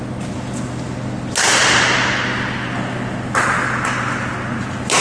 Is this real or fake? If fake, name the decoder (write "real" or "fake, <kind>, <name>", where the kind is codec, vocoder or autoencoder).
real